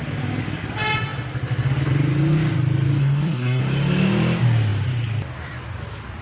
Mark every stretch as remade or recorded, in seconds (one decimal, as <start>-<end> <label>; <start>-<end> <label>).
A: 0.0-3.0 recorded; 3.0-3.6 remade; 3.6-6.2 recorded